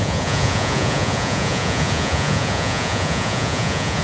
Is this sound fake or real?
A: fake